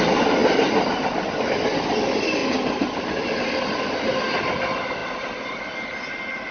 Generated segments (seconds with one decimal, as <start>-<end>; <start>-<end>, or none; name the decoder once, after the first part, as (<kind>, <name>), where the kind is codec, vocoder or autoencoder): none